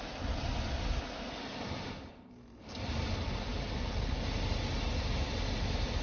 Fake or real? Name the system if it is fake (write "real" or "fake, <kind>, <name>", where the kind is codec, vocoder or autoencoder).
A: real